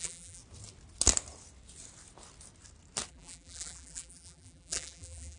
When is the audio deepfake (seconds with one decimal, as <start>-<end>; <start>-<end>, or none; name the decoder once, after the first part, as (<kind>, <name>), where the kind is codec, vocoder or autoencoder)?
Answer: 0.0-0.4 (vocoder, BigVGAN v2); 3.1-5.4